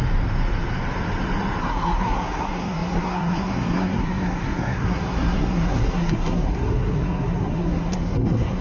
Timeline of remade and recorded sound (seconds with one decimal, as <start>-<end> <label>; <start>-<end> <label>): 0.0-1.6 recorded; 1.6-8.6 remade